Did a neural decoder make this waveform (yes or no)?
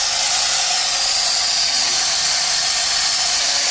no